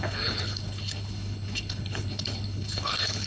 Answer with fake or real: fake